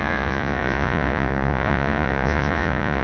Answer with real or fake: fake